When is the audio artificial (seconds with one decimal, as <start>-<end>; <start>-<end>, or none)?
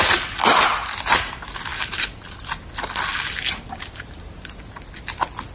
none